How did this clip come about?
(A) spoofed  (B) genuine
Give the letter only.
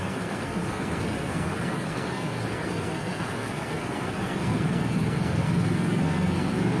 A